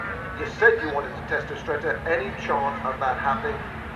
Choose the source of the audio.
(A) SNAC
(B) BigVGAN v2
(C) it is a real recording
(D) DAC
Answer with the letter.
C